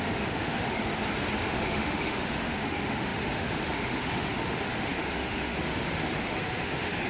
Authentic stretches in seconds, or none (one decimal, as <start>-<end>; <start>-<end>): 0.9-1.4